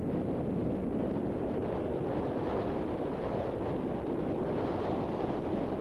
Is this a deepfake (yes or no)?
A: no